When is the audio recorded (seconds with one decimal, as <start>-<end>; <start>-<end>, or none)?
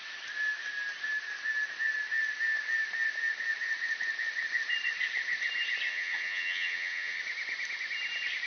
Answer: 0.0-5.9; 7.2-8.5